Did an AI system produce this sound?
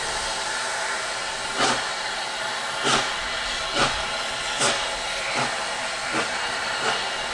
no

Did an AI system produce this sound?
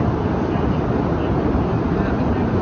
no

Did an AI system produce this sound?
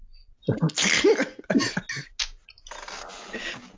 no